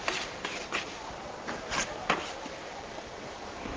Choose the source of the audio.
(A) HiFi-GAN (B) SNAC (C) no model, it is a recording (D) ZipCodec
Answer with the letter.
C